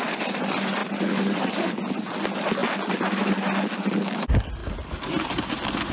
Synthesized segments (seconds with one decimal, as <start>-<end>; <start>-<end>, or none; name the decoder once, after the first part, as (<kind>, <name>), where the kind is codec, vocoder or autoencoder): none